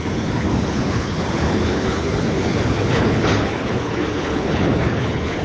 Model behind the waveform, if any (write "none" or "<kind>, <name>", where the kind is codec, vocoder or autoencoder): codec, HILCodec